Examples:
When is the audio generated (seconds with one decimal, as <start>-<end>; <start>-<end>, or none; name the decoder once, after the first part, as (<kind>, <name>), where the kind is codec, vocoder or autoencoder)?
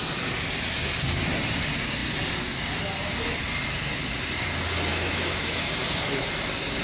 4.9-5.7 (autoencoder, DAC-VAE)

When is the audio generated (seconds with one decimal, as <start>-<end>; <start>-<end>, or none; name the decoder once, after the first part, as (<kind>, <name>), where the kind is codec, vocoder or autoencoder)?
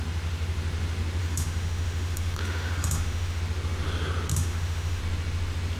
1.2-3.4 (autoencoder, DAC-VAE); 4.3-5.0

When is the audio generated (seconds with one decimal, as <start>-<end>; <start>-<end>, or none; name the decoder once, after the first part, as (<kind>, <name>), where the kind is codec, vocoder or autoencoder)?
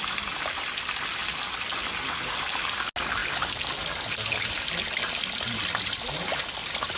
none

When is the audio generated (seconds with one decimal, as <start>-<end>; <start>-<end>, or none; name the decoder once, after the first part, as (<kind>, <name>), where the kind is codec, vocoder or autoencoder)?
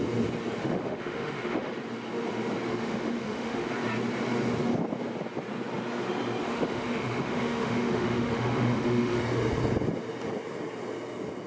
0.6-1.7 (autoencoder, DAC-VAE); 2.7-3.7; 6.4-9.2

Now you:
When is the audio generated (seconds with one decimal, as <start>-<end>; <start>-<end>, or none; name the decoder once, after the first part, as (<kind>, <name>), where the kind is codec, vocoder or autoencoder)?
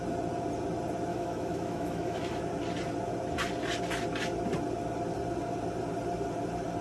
1.1-2.4 (autoencoder, DAC-VAE)